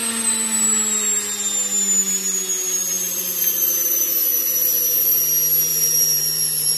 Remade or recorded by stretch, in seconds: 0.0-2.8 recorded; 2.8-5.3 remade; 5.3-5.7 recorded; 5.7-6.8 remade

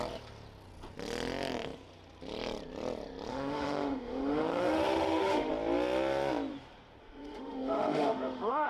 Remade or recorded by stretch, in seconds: 0.0-3.3 recorded; 3.3-5.5 remade; 5.5-7.0 recorded; 7.0-8.7 remade

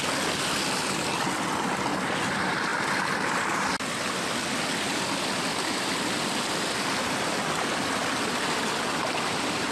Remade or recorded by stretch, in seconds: 0.0-9.7 recorded